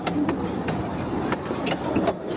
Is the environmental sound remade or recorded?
recorded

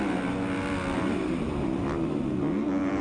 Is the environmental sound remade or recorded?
recorded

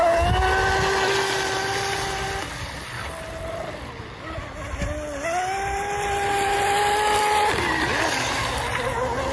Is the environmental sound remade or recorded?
recorded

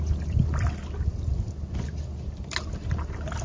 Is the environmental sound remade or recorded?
recorded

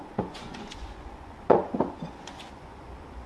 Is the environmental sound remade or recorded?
remade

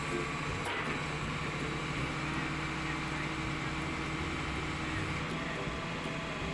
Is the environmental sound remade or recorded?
recorded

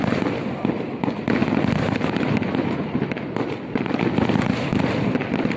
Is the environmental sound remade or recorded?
recorded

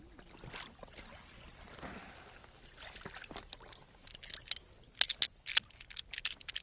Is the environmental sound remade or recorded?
recorded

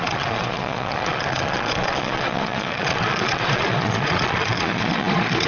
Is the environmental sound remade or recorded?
remade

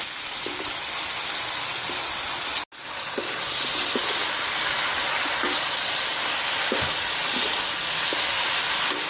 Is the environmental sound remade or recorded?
recorded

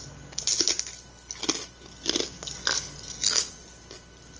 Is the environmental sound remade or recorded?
recorded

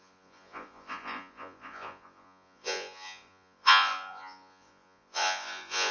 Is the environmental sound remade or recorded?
remade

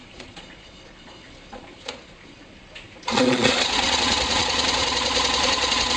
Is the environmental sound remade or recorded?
remade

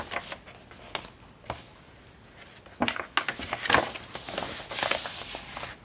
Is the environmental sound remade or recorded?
recorded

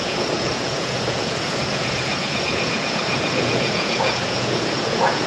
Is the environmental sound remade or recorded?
remade